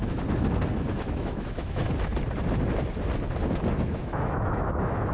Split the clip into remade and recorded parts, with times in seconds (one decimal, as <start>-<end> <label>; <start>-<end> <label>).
0.0-0.9 recorded; 0.9-1.8 remade; 1.8-3.7 recorded; 3.7-5.1 remade